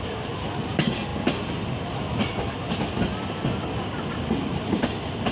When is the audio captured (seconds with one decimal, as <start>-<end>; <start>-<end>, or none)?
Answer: 0.0-5.3